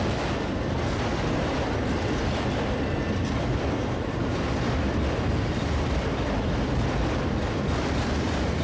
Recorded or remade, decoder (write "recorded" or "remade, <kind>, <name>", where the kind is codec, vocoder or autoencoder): recorded